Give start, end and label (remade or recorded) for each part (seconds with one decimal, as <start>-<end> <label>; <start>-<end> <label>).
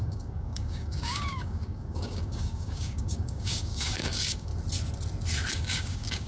0.0-4.5 remade; 4.5-5.5 recorded; 5.5-6.3 remade